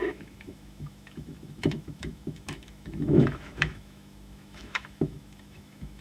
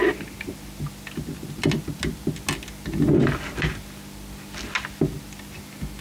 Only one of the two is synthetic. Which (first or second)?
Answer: first